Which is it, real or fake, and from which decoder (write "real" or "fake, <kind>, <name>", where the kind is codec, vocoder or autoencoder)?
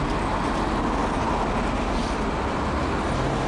real